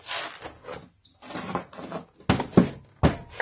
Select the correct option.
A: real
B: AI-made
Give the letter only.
A